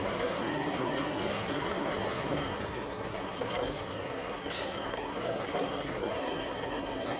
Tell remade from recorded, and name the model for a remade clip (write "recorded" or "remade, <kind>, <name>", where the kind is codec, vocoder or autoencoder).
remade, codec, SNAC